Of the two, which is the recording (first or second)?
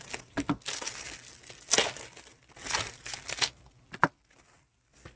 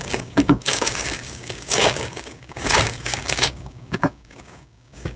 first